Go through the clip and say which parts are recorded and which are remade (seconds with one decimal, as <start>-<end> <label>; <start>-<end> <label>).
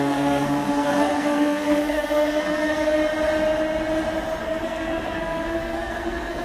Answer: 0.0-3.0 remade; 3.0-4.4 recorded; 4.4-6.4 remade